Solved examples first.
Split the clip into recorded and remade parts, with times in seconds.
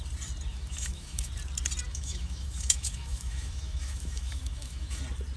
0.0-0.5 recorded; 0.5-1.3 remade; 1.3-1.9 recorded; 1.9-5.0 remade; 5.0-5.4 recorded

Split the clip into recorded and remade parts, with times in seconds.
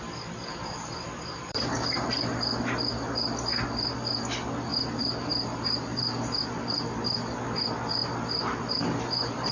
0.0-0.5 recorded; 0.5-2.1 remade; 2.1-4.7 recorded; 4.7-6.4 remade; 6.4-9.5 recorded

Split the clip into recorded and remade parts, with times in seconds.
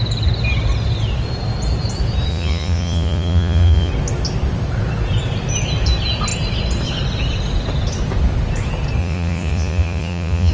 0.0-2.3 recorded; 2.3-3.9 remade; 3.9-9.0 recorded; 9.0-10.5 remade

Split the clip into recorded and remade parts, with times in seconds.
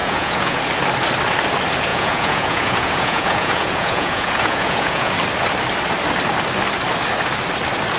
0.0-0.6 remade; 0.6-1.9 recorded; 1.9-5.1 remade; 5.1-8.0 recorded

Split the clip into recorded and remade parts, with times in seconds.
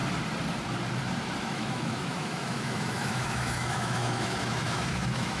0.0-1.4 recorded; 1.4-5.4 remade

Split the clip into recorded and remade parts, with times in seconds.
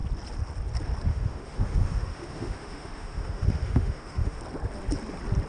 0.0-1.1 recorded; 1.1-4.4 remade; 4.4-5.5 recorded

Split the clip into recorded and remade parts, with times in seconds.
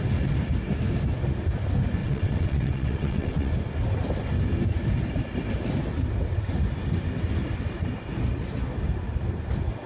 0.0-2.0 recorded; 2.0-3.5 remade; 3.5-9.9 recorded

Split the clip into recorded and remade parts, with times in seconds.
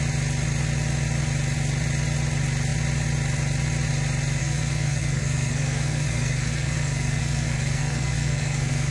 0.0-4.4 recorded; 4.4-8.9 remade